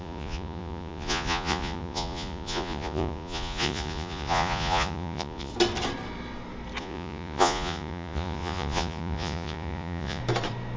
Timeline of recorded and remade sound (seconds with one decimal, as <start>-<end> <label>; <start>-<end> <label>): 0.0-5.5 remade; 5.5-6.8 recorded; 6.8-10.2 remade; 10.2-10.8 recorded